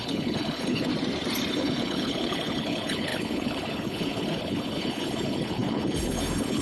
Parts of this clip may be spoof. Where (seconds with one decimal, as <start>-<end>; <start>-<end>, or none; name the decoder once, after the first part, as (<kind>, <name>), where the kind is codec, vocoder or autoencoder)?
0.0-0.9 (codec, HILCodec); 1.5-6.6